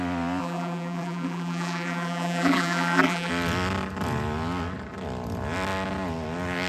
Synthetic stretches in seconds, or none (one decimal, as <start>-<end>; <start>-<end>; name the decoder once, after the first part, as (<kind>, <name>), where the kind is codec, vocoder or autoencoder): 0.4-3.3 (vocoder, BigVGAN v2)